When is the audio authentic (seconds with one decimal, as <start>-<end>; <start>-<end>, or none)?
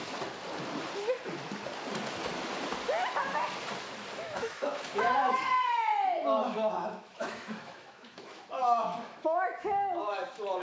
0.0-4.1; 5.9-6.4